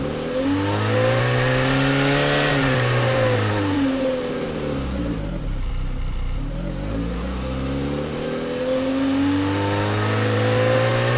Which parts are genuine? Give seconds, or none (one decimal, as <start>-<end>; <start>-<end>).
0.0-2.5; 5.7-11.2